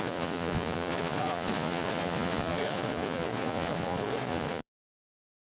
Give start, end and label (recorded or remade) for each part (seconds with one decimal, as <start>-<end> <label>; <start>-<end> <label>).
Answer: 0.0-5.4 remade